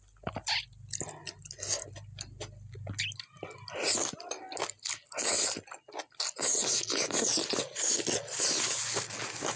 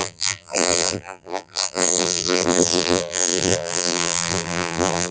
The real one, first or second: first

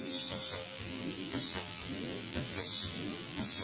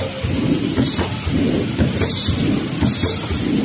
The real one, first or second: second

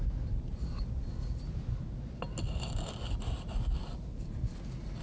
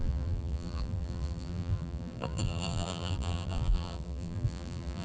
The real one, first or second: first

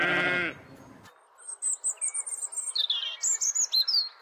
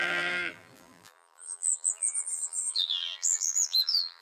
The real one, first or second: first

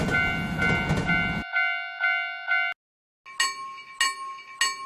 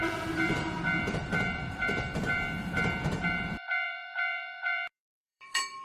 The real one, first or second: first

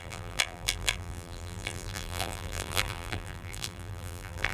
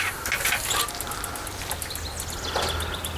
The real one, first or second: second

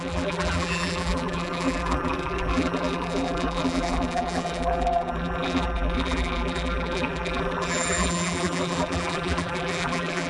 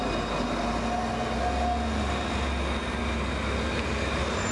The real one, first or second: second